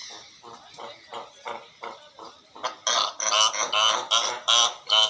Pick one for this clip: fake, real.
real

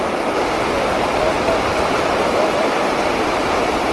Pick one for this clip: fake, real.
real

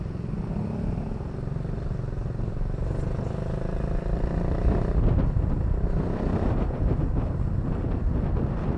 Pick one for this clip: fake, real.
real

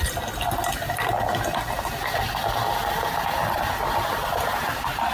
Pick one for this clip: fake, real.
real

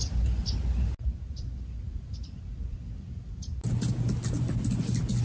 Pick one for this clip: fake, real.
real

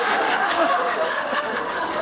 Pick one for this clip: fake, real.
fake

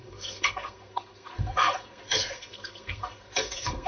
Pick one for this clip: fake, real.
fake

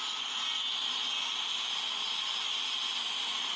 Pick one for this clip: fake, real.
real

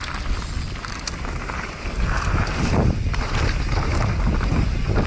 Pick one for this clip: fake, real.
real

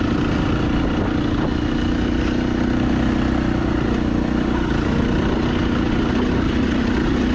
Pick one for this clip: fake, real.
real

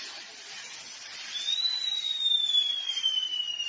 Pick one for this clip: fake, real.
fake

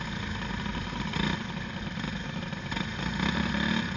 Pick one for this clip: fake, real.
real